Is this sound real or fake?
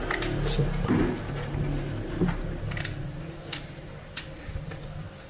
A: real